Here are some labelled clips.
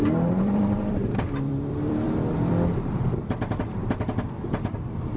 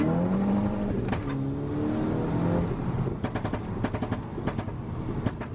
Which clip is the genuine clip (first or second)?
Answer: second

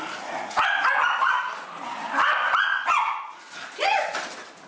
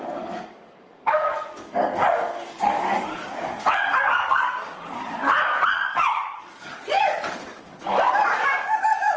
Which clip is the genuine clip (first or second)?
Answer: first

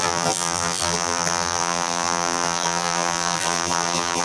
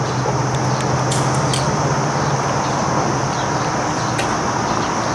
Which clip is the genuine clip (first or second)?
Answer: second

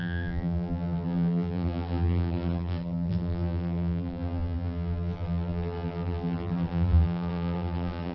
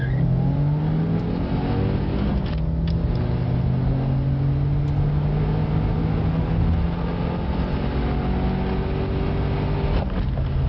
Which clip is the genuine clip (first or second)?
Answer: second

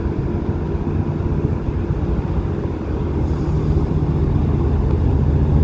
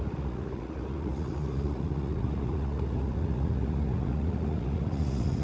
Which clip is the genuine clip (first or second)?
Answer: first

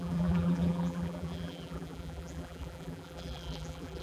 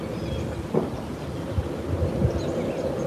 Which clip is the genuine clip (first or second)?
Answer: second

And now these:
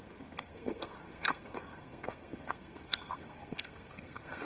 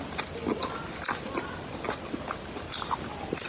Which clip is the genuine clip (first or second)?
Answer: second